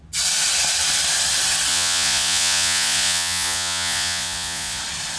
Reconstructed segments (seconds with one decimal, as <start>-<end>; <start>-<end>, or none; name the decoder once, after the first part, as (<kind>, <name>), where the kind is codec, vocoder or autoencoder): 1.7-4.8 (vocoder, Vocos)

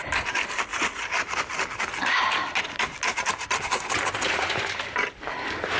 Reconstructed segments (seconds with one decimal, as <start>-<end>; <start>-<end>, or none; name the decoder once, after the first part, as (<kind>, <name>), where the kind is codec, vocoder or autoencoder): none

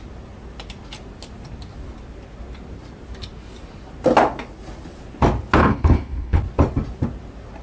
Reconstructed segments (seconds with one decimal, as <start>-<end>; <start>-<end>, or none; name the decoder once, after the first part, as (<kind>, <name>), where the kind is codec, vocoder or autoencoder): 5.6-6.4 (codec, HILCodec)

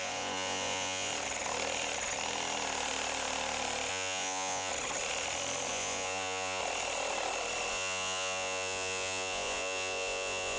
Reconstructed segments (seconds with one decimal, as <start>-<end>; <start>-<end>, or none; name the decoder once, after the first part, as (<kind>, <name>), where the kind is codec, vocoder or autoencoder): 0.0-1.1 (vocoder, Vocos); 3.9-4.7; 5.7-6.6; 7.7-10.6

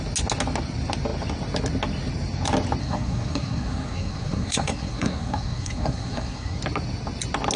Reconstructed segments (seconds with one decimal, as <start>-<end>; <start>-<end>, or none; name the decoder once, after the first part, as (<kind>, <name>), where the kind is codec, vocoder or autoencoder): 2.8-6.6 (codec, SNAC)